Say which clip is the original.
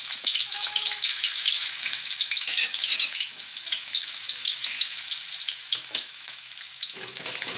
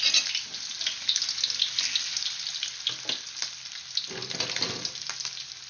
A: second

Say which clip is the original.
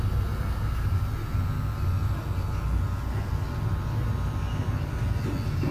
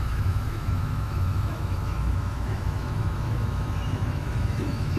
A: first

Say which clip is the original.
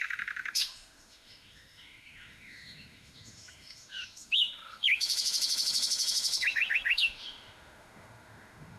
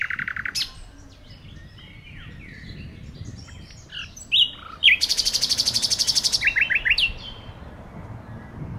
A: second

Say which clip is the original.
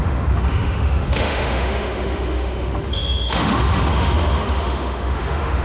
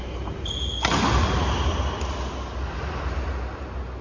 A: second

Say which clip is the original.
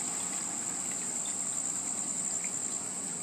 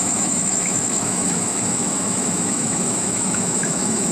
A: first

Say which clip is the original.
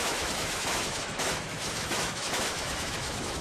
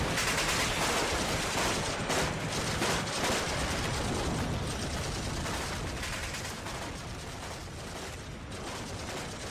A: second